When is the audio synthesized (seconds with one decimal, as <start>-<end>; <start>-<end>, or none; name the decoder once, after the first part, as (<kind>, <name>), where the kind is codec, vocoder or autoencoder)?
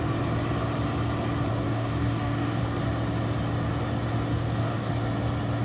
1.5-2.6 (codec, DAC); 4.3-4.9